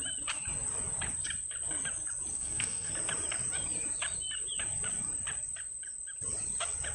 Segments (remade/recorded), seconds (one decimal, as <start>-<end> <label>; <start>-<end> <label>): 0.0-2.3 recorded; 2.3-2.9 remade; 2.9-6.9 recorded